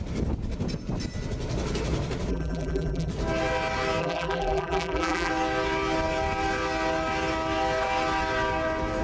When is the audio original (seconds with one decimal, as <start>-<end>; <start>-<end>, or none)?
0.0-2.3; 3.1-4.0; 5.3-9.0